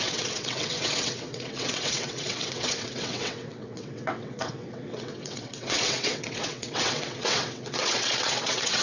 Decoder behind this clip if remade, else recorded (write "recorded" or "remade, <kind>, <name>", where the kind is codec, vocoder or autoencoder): remade, vocoder, WaveNeXt